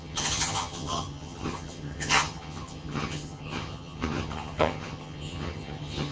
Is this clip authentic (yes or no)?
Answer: no